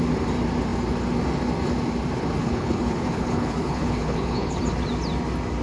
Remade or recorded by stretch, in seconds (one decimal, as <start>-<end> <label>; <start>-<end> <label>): 0.0-2.4 recorded; 2.4-4.6 remade; 4.6-5.6 recorded